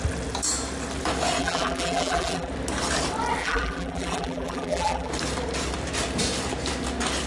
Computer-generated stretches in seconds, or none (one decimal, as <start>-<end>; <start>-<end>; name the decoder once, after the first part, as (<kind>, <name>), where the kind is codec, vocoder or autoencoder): 1.4-2.5 (vocoder, BigVGAN v2); 3.4-5.1